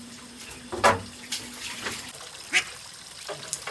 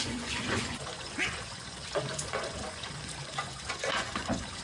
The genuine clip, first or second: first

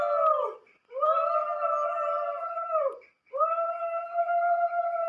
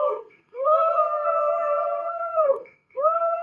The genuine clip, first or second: first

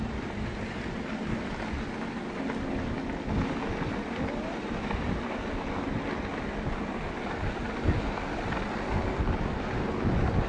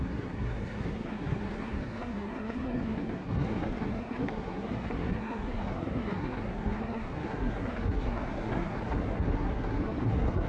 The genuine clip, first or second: first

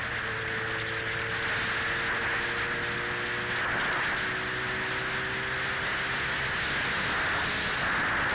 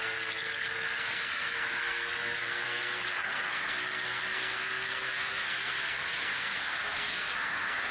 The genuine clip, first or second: first